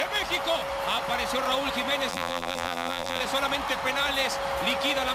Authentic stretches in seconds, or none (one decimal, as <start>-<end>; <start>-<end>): 0.0-2.1; 3.2-5.1